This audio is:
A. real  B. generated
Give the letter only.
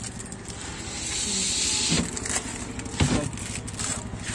A